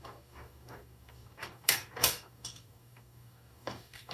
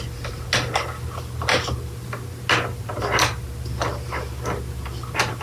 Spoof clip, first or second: first